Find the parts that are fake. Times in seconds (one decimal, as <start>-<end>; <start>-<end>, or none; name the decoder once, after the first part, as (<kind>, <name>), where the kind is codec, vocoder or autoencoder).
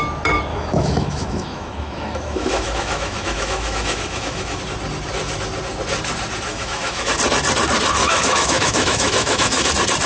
0.5-4.6 (autoencoder, DAC-VAE); 6.5-7.1; 8.0-9.7